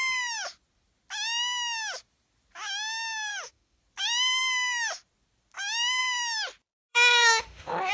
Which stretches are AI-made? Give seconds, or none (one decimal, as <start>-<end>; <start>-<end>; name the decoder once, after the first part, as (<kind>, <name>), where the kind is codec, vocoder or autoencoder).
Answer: 3.3-3.8 (autoencoder, DAC-VAE); 6.9-7.9

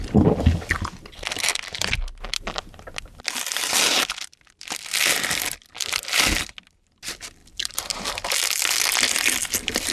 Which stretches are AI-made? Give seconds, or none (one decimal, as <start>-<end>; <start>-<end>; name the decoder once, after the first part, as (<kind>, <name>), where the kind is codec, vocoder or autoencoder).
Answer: none